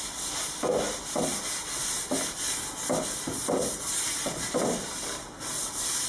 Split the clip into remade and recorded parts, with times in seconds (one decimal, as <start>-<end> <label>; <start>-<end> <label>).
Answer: 0.0-6.1 recorded